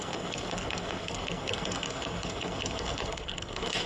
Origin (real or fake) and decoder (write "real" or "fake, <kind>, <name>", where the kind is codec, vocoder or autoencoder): fake, codec, SNAC